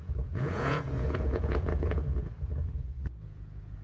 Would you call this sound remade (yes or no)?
yes